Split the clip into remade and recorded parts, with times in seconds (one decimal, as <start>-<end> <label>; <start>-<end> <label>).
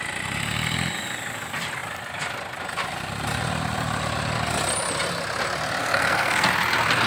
0.0-5.8 recorded; 5.8-6.5 remade; 6.5-7.1 recorded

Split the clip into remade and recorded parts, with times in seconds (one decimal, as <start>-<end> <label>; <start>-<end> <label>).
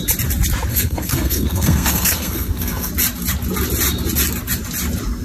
0.0-0.7 recorded; 0.7-2.9 remade; 2.9-5.2 recorded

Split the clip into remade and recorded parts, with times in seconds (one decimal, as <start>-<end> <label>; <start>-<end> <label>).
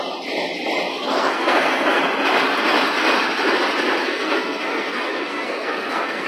0.0-0.9 recorded; 0.9-2.0 remade; 2.0-4.0 recorded; 4.0-6.3 remade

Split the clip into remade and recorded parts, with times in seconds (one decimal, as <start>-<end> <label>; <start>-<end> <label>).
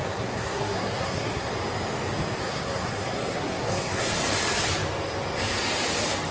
0.0-1.5 remade; 1.5-2.4 recorded; 2.4-4.1 remade; 4.1-6.3 recorded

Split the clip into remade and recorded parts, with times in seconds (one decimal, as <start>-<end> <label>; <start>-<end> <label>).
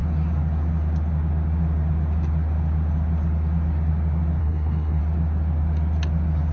0.0-4.4 recorded; 4.4-5.0 remade; 5.0-6.5 recorded